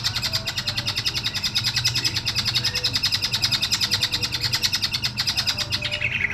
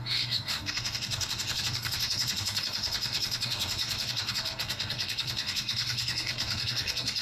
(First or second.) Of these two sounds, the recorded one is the first